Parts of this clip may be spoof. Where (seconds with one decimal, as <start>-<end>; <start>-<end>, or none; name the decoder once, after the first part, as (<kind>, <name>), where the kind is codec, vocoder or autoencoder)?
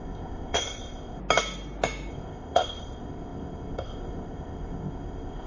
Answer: 0.0-1.2 (codec, ZipCodec); 2.1-5.5